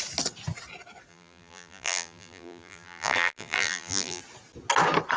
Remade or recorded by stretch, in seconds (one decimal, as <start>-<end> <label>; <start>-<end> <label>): 0.0-1.1 recorded; 1.1-4.2 remade; 4.2-5.2 recorded